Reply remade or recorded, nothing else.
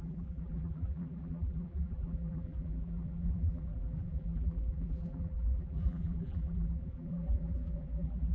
remade